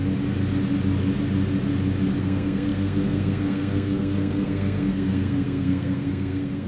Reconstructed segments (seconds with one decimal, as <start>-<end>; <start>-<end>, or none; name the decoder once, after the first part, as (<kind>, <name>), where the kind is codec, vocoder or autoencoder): 2.2-6.7 (codec, SNAC)